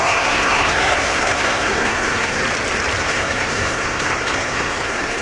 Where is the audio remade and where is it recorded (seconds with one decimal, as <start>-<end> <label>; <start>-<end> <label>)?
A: 0.0-2.4 remade; 2.4-3.0 recorded; 3.0-5.2 remade